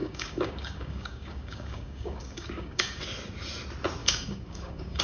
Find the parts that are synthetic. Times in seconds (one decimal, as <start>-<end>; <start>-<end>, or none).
0.0-3.0; 4.0-5.0